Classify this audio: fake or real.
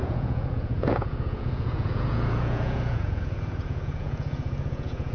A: fake